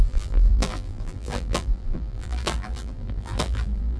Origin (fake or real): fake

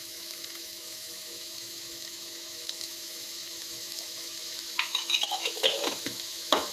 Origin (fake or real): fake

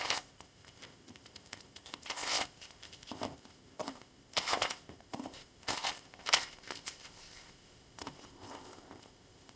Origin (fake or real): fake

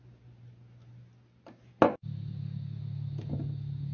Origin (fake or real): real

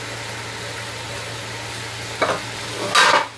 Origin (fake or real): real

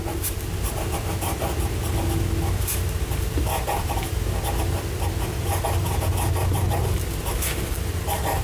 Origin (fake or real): real